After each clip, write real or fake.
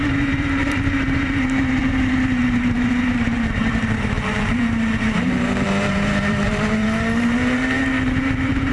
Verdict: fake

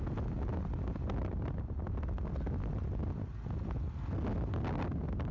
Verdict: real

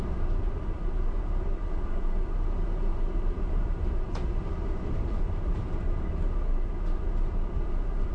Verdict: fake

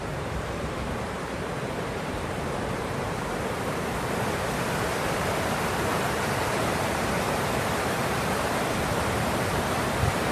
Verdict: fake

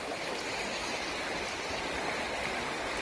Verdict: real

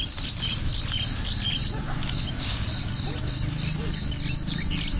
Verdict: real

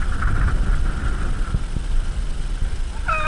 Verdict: real